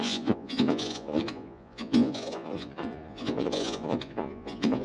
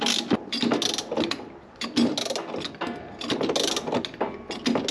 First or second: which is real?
second